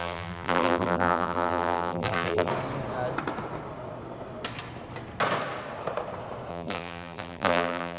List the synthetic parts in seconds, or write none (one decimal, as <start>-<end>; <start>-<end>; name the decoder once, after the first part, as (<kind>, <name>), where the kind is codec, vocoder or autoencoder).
0.0-2.5 (vocoder, BigVGAN v2); 6.5-8.0

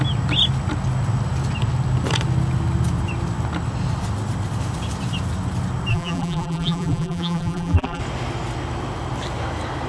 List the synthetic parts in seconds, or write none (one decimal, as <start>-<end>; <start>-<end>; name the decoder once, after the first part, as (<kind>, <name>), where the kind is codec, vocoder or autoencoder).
5.9-8.0 (vocoder, BigVGAN v2)

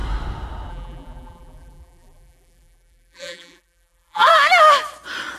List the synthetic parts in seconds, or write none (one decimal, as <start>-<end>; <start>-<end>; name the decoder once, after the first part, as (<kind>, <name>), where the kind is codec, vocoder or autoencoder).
0.7-4.3 (vocoder, BigVGAN v2)

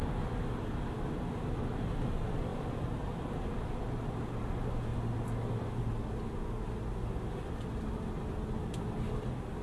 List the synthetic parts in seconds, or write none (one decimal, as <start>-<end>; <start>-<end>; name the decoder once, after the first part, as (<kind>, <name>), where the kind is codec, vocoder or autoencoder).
2.5-3.0 (vocoder, BigVGAN v2)

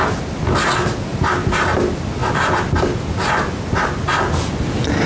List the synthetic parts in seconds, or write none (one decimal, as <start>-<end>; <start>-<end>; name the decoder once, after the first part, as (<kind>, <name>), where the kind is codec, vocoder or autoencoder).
2.2-3.1 (vocoder, BigVGAN v2)